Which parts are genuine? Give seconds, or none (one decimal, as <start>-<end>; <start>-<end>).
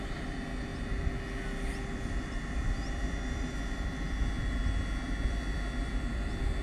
0.7-1.7; 4.2-5.1